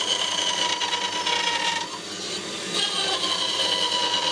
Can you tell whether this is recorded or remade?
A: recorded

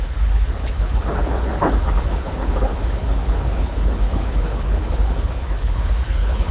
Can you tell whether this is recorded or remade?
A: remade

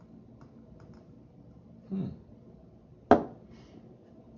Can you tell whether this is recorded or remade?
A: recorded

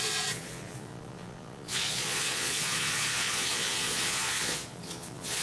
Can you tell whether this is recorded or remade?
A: remade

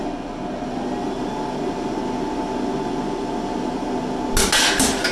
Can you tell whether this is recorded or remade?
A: recorded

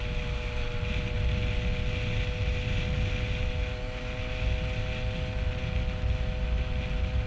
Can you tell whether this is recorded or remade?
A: recorded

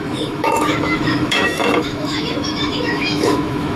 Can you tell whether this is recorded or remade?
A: remade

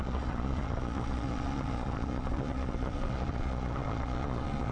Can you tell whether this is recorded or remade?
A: remade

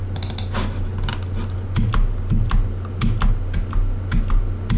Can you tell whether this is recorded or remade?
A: recorded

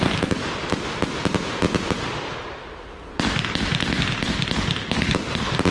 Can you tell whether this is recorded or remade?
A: recorded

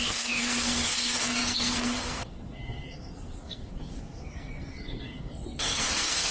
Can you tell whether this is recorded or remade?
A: remade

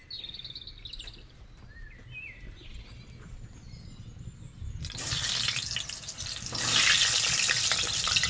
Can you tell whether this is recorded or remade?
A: recorded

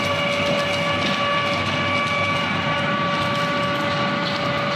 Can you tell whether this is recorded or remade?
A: recorded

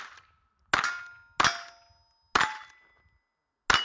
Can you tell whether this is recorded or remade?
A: recorded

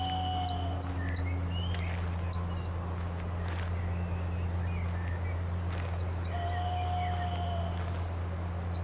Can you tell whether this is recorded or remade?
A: recorded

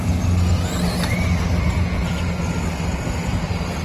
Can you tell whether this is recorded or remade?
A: recorded